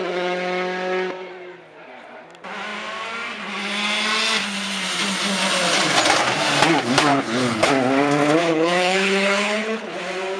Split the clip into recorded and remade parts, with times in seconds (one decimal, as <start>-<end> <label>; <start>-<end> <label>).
0.0-7.1 recorded; 7.1-7.7 remade; 7.7-8.4 recorded; 8.4-10.0 remade; 10.0-10.4 recorded